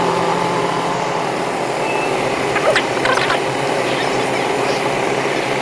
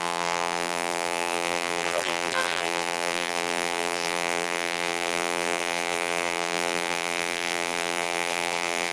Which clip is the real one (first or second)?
first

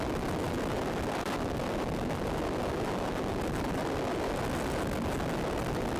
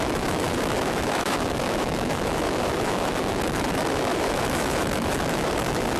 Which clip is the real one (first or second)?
first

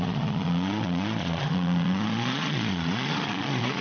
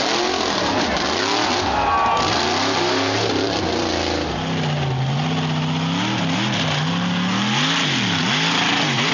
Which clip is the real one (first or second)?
second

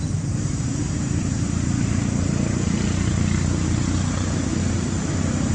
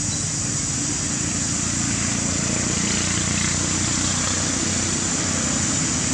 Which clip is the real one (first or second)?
second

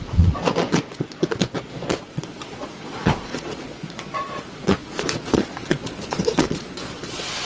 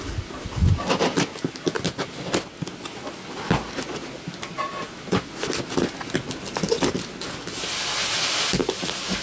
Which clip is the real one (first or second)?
second